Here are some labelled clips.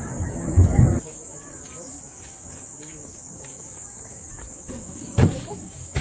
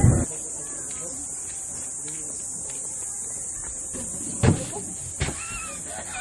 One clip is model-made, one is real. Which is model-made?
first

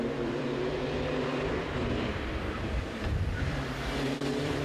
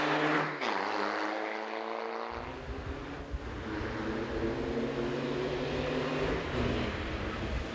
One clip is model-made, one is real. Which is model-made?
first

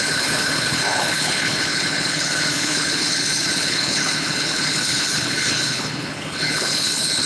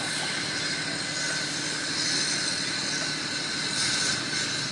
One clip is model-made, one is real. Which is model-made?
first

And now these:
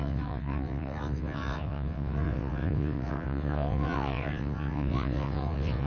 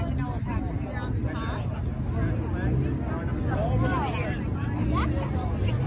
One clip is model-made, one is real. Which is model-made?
first